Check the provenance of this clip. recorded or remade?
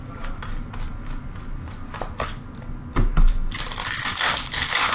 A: recorded